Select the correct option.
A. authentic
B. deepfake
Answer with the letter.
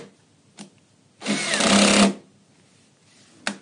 A